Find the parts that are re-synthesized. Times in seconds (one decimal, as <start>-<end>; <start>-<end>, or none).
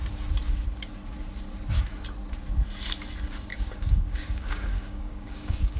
3.5-5.8